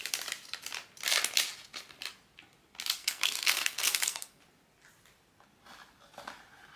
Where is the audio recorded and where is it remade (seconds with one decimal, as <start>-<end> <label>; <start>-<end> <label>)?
0.0-3.0 recorded; 3.0-4.4 remade; 4.4-6.8 recorded